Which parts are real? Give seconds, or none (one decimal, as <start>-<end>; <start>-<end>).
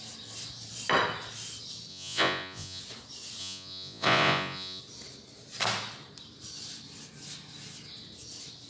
0.0-1.9; 2.8-3.4; 4.8-8.7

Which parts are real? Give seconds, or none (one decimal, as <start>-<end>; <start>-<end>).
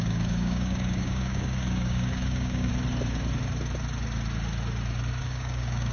2.7-5.2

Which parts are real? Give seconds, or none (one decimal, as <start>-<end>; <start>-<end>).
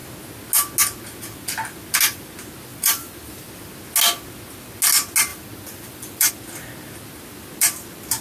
0.0-2.7; 3.5-5.3; 6.3-8.2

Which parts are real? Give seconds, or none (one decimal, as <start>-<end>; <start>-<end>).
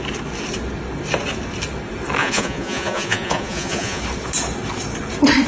0.0-2.2; 4.0-5.5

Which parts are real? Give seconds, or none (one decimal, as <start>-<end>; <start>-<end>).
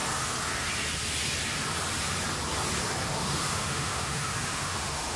0.0-3.1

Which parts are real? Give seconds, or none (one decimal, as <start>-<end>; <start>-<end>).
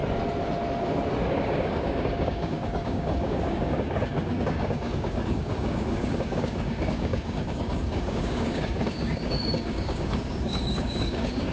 0.0-1.3